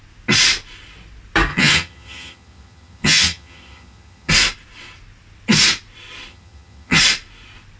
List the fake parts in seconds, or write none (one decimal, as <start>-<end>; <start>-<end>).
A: 1.5-4.3; 6.3-7.0